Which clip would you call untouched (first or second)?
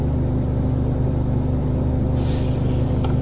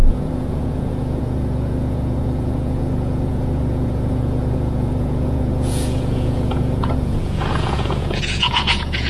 first